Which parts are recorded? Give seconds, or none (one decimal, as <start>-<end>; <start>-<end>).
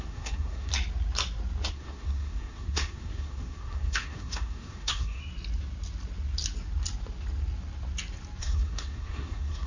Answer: 0.7-1.7; 5.2-8.4